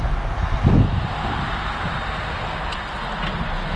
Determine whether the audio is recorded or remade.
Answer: recorded